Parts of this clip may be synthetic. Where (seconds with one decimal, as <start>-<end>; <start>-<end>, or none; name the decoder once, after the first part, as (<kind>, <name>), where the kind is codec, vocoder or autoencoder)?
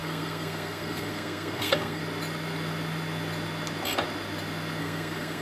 0.0-2.0 (codec, SNAC); 4.8-5.4